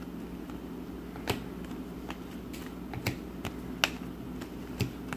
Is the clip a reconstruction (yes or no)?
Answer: no